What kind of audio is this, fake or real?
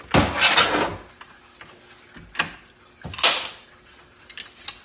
real